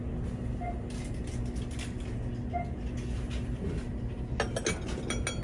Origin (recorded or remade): recorded